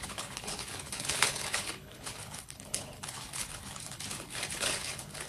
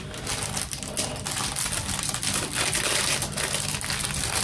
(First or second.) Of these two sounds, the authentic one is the second